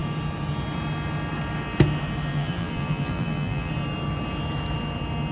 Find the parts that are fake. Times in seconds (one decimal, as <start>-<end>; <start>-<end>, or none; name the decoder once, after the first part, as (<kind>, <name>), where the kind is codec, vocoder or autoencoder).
2.3-3.7 (vocoder, BigVGAN v2)